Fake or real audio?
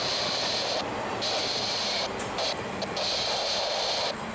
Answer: real